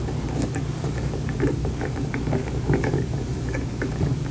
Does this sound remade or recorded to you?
remade